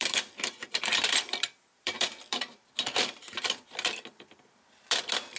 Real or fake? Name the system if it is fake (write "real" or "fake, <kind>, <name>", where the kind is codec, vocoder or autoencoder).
fake, vocoder, BigVGAN v2